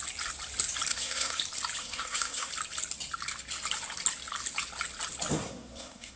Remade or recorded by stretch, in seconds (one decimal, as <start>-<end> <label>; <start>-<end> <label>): 0.0-0.9 recorded; 0.9-1.4 remade; 1.4-1.8 recorded; 1.8-2.5 remade; 2.5-5.3 recorded; 5.3-6.2 remade

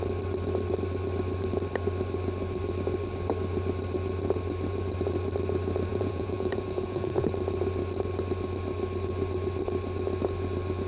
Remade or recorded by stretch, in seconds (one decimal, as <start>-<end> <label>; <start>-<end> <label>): 0.0-5.9 recorded; 5.9-7.3 remade; 7.3-10.9 recorded

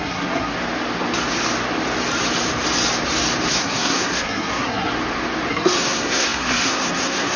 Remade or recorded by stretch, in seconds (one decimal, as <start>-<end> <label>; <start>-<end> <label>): 0.0-0.5 remade; 0.5-3.5 recorded; 3.5-4.9 remade; 4.9-5.5 recorded; 5.5-7.4 remade

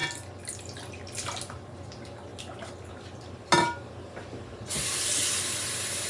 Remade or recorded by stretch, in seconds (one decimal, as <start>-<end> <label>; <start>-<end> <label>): 0.0-6.1 recorded

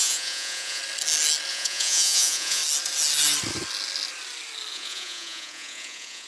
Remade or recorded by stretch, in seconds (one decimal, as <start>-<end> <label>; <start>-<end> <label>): 0.0-0.8 remade; 0.8-1.5 recorded; 1.5-2.6 remade; 2.6-4.7 recorded; 4.7-6.3 remade